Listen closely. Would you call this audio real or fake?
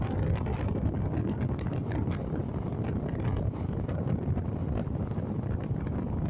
real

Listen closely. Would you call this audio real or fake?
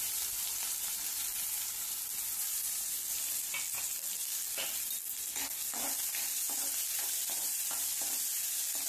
real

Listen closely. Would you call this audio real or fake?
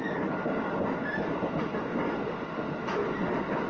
real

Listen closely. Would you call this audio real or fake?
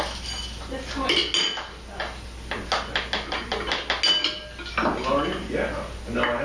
real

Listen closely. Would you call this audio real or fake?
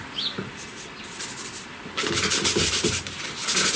real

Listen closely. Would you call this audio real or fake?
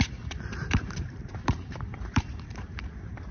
fake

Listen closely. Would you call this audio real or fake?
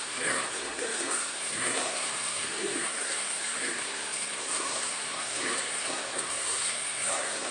fake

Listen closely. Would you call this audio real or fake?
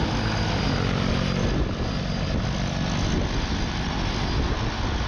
real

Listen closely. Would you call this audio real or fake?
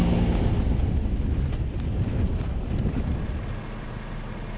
real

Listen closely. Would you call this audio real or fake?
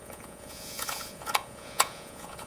fake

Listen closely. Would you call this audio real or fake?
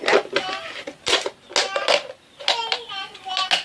real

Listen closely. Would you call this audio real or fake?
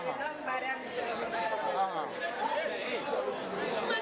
fake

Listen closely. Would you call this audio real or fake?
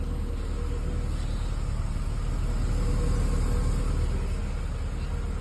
real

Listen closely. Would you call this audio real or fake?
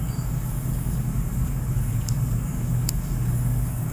fake